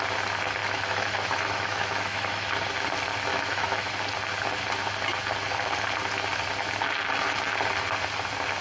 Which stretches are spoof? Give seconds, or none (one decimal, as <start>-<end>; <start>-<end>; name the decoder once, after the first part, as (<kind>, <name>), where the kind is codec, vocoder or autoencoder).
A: 0.6-2.5 (autoencoder, DAC-VAE); 3.3-3.9